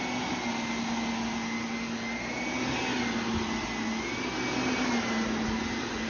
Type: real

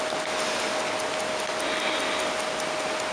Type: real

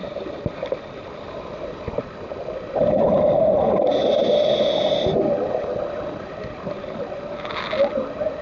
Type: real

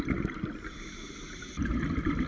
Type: real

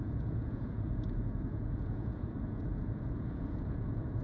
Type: fake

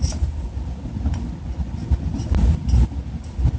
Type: real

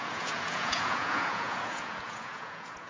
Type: fake